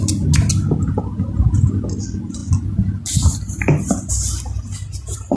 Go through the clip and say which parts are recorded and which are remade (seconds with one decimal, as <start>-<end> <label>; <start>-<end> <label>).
0.0-5.4 recorded

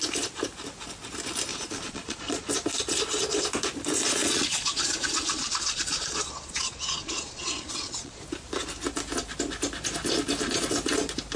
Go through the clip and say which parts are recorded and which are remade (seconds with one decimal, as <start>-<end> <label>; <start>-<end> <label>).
0.0-1.5 recorded; 1.5-2.5 remade; 2.5-4.2 recorded; 4.2-8.2 remade; 8.2-11.4 recorded

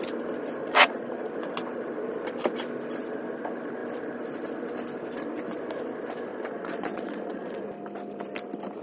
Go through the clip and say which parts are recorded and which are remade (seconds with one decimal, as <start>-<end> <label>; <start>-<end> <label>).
0.0-0.6 recorded; 0.6-1.3 remade; 1.3-6.3 recorded; 6.3-7.6 remade; 7.6-8.8 recorded

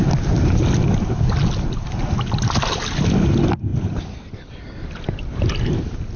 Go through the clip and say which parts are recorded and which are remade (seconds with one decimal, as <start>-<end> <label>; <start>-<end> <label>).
0.0-6.2 recorded

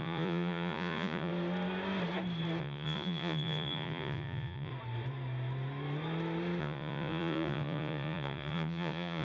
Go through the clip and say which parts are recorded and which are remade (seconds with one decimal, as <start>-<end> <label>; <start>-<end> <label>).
0.0-1.3 remade; 1.3-2.6 recorded; 2.6-4.7 remade; 4.7-6.6 recorded; 6.6-9.2 remade

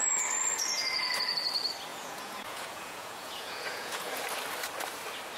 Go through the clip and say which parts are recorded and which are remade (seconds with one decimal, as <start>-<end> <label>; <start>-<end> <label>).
0.0-1.9 recorded; 1.9-4.2 remade; 4.2-5.4 recorded